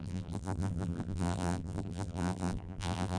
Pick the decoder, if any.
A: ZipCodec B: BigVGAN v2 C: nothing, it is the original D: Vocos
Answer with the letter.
B